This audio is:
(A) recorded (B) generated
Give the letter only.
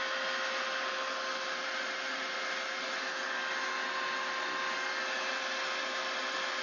A